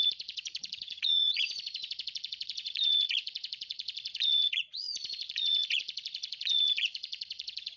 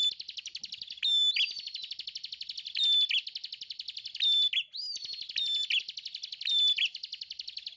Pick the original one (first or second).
second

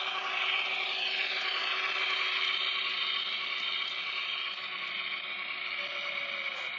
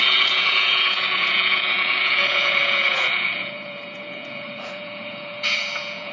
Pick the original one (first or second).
first